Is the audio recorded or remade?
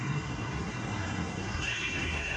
remade